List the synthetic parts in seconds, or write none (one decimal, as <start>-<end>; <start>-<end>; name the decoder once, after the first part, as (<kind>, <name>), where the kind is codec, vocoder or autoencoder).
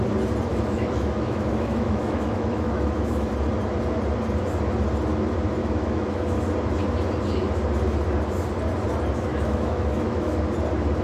0.5-3.3 (autoencoder, DAC-VAE); 5.6-6.3; 9.3-10.4